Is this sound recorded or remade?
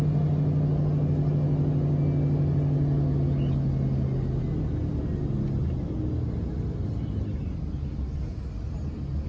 recorded